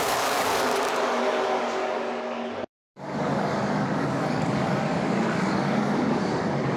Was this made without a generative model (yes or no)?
no